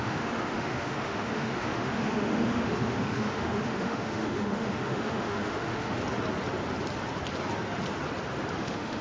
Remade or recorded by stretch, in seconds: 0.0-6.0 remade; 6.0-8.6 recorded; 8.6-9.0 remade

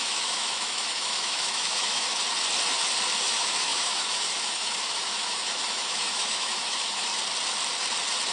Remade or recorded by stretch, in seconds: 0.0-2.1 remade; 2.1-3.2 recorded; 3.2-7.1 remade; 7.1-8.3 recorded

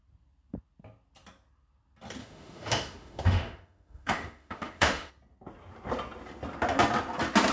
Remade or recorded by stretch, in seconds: 0.0-2.2 recorded; 2.2-5.1 remade; 5.1-7.5 recorded

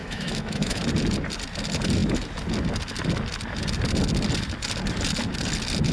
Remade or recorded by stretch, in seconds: 0.0-0.8 remade; 0.8-5.9 recorded